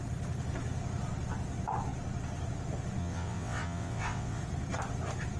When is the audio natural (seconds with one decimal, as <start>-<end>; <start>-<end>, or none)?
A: 0.0-3.0; 4.4-5.4